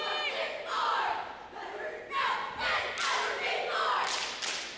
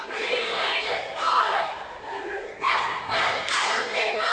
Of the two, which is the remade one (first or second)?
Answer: second